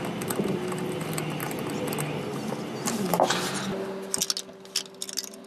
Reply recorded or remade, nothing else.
recorded